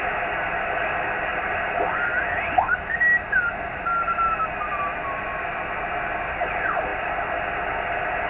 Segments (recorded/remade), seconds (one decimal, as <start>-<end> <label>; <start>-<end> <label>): 0.0-8.3 recorded